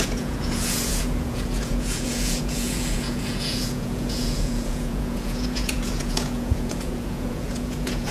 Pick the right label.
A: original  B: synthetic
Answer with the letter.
B